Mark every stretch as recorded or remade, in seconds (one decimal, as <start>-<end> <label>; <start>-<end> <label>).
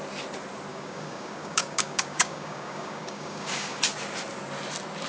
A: 0.0-0.7 recorded; 0.7-3.8 remade; 3.8-5.1 recorded